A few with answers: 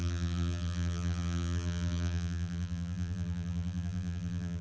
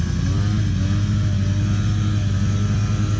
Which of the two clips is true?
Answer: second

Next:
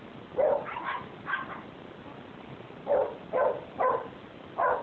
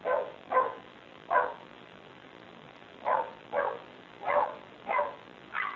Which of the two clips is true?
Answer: first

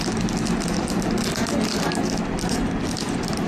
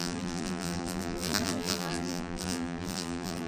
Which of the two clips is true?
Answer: first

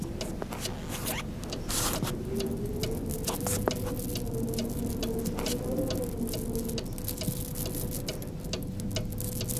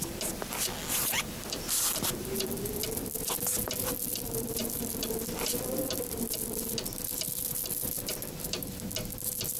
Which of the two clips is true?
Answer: first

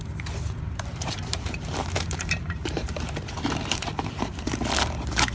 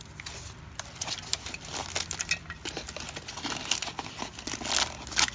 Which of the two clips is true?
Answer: second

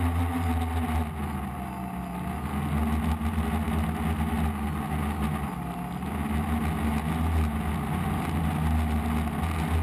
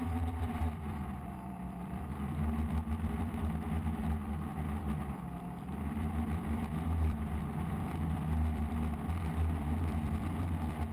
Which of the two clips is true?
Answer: first